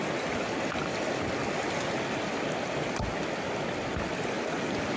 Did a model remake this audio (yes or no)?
no